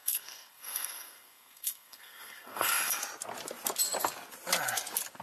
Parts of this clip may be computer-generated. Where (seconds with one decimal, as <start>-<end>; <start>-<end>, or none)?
0.0-3.0

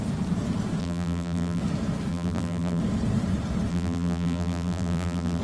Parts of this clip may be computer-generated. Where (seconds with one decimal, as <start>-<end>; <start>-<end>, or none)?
0.8-1.6; 2.1-2.8; 3.7-5.4